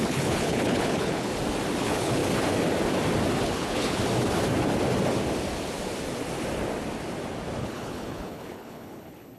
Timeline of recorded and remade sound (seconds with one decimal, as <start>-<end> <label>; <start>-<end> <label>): 0.0-1.3 remade; 1.3-1.8 recorded; 1.8-2.2 remade; 2.2-3.4 recorded; 3.4-4.0 remade; 4.0-7.6 recorded; 7.6-9.4 remade